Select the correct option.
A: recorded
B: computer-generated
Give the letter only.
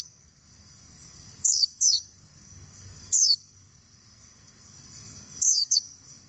B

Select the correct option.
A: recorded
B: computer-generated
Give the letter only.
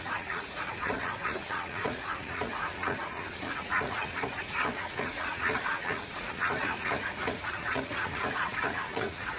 B